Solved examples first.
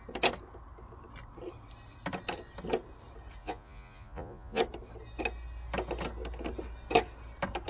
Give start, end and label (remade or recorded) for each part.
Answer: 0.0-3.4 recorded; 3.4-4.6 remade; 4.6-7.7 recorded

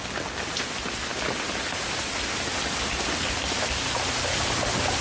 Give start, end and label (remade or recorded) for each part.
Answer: 0.0-5.0 recorded

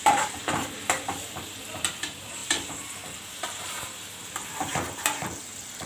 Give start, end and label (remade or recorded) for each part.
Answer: 0.0-5.9 remade

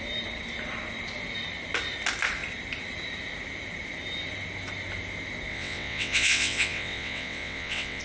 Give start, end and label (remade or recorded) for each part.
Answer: 0.0-5.5 recorded; 5.5-8.0 remade

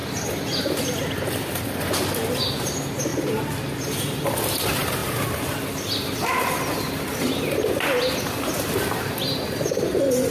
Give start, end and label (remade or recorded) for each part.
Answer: 0.0-3.1 recorded; 3.1-4.3 remade; 4.3-10.3 recorded

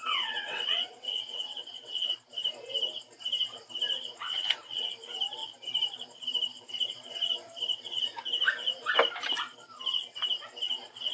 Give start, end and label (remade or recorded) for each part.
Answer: 0.0-2.1 remade; 2.1-4.1 recorded; 4.1-4.9 remade; 4.9-11.1 recorded